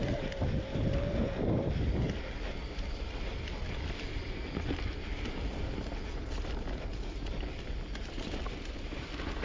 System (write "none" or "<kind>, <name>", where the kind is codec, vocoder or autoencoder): none